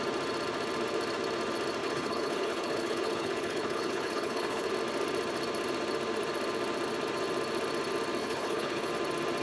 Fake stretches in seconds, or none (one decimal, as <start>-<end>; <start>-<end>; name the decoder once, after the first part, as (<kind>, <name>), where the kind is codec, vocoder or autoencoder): 1.8-4.7 (codec, HILCodec); 8.2-8.9

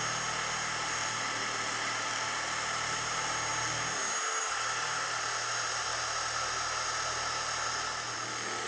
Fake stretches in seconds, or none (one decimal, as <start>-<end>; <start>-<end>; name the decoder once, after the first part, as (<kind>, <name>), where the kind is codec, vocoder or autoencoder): none

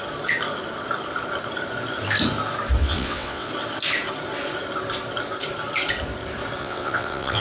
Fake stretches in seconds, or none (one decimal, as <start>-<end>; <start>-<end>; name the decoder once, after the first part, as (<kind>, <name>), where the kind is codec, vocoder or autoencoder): 2.8-3.5 (vocoder, WaveNeXt); 6.6-7.4

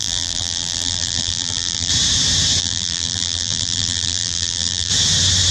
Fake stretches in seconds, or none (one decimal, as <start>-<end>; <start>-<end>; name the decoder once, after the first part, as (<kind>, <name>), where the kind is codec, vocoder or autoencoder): 0.0-1.9 (vocoder, BigVGAN v2); 2.6-4.9

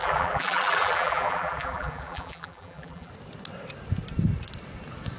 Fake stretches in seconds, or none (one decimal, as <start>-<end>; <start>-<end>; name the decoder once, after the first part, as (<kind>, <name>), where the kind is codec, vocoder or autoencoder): 0.0-3.1 (vocoder, BigVGAN v2)

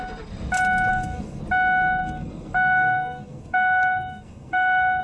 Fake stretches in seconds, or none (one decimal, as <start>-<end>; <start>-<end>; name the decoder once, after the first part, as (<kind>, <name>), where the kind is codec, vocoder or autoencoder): 0.9-1.4 (codec, SNAC); 2.0-5.0

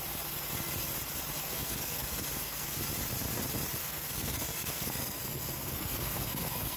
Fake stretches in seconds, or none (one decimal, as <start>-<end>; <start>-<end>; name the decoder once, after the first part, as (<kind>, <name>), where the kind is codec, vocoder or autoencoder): 1.4-2.8 (codec, SNAC); 3.8-6.8